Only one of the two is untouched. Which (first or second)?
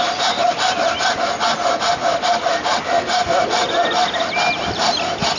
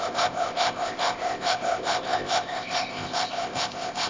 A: first